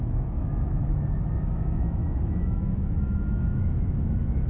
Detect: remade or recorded remade